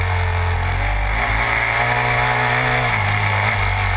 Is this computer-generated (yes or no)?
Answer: no